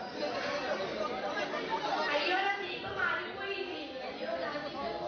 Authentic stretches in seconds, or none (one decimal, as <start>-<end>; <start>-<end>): 0.0-5.1

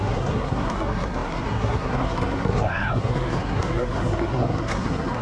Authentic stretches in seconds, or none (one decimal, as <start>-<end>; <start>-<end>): none

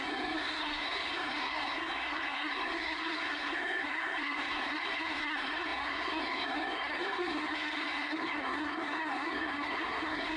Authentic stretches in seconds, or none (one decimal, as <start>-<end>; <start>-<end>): none

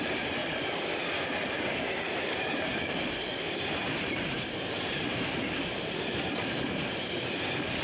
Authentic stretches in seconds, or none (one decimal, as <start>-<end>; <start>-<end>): 0.4-2.1; 3.3-3.9

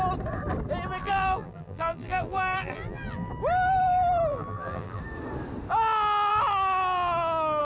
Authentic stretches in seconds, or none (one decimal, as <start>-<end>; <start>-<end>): 0.0-1.0; 3.3-4.3; 5.0-7.6

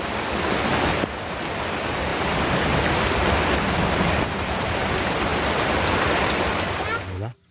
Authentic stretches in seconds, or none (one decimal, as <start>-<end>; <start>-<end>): 0.0-7.5